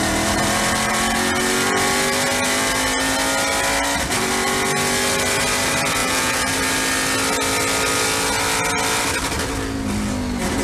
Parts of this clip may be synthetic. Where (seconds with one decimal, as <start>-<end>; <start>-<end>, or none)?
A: 6.0-6.5